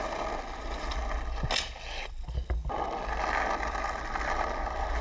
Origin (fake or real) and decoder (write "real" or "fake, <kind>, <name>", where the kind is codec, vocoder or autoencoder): real